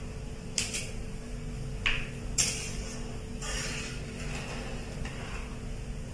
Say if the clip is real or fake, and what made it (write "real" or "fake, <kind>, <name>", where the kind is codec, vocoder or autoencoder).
real